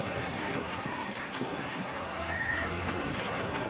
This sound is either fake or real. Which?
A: fake